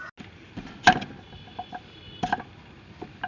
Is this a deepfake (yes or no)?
no